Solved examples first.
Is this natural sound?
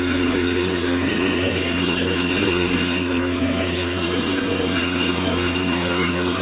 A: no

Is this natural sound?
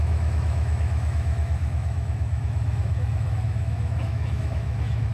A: no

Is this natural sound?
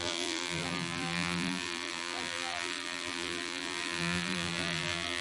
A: no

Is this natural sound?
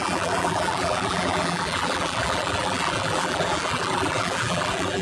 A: no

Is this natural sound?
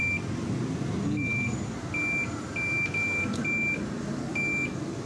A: yes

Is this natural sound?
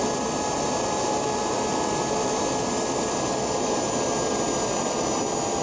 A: yes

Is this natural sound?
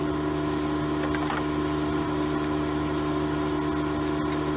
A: yes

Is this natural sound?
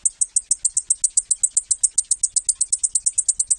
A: yes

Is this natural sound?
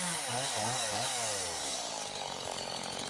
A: no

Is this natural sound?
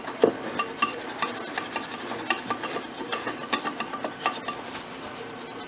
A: yes